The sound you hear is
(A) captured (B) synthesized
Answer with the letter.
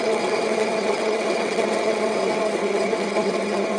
B